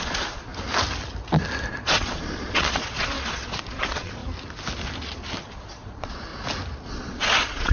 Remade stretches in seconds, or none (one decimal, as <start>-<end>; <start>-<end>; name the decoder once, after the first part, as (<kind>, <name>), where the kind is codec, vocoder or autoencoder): 0.0-0.5 (vocoder, Vocos); 1.7-4.2; 5.5-6.3; 6.9-7.7